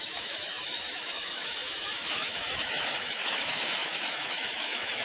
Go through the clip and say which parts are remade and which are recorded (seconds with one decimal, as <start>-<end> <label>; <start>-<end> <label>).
0.0-5.0 remade